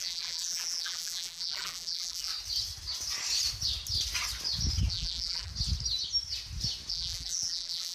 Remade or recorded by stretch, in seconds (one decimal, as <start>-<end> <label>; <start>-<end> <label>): 0.0-2.3 remade; 2.3-4.9 recorded; 4.9-5.5 remade; 5.5-6.9 recorded; 6.9-7.9 remade